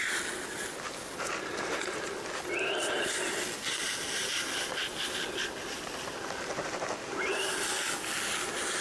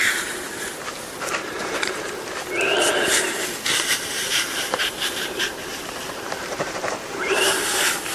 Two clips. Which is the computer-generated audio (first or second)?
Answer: second